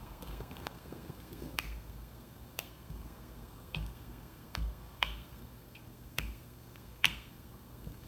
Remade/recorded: remade